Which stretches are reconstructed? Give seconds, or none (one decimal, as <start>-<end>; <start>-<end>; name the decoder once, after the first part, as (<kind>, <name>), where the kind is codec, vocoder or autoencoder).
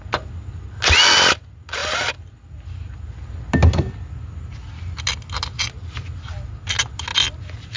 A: none